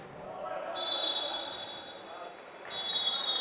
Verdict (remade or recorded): recorded